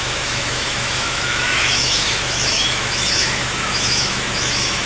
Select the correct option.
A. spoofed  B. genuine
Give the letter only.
A